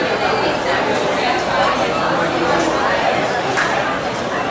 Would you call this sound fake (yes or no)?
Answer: no